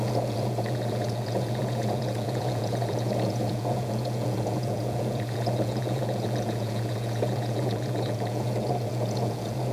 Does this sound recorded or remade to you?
remade